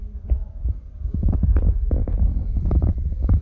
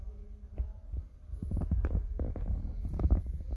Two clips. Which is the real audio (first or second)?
second